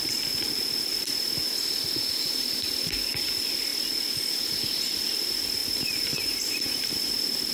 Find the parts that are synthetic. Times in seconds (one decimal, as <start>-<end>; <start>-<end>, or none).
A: 5.6-7.1